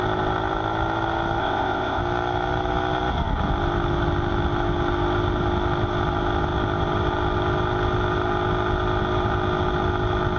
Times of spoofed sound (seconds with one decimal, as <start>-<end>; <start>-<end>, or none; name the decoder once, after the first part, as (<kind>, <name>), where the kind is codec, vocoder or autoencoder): 1.4-2.0 (codec, ZipCodec)